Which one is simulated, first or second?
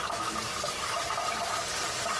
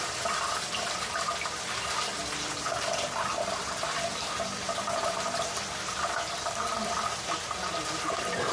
second